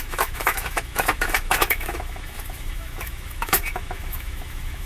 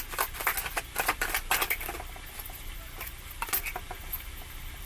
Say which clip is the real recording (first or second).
second